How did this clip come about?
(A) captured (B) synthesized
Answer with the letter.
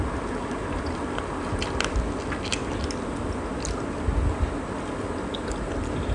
A